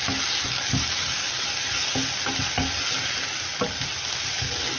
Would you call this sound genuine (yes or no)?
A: yes